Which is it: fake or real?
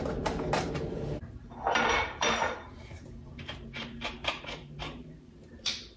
fake